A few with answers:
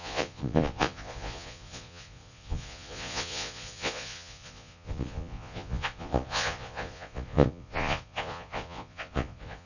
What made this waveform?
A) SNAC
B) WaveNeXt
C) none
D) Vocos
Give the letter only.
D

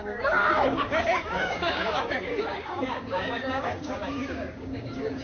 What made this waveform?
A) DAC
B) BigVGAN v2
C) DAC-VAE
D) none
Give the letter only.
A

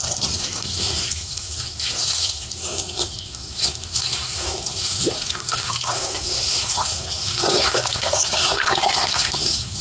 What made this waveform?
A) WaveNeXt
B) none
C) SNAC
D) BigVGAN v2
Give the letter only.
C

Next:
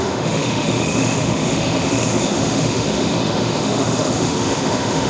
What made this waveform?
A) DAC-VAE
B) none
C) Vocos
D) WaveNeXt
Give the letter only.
A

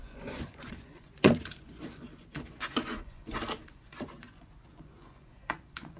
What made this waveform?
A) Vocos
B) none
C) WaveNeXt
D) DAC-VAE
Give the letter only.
A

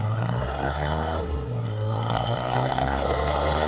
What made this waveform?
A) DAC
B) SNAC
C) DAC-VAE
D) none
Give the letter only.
B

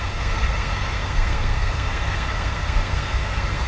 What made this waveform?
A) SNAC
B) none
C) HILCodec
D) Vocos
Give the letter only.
A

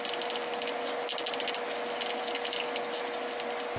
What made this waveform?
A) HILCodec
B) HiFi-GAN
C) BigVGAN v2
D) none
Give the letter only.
D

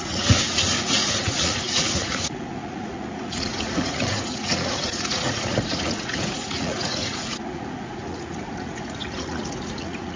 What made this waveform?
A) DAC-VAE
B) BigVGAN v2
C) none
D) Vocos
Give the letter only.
D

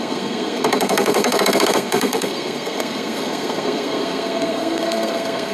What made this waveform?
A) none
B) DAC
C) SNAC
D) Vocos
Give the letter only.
C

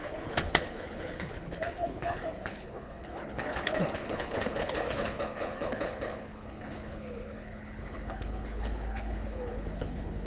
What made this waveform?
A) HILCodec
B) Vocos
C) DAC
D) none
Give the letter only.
A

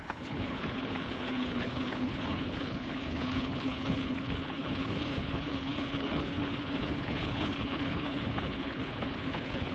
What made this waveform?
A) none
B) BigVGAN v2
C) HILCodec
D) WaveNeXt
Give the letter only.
C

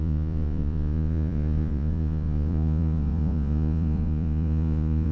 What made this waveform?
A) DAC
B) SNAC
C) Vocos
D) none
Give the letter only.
C